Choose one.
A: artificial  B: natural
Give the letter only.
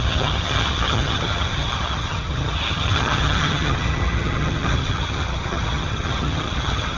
A